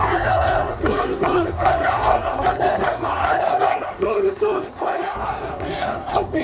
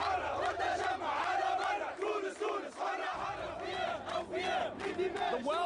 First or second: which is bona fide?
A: second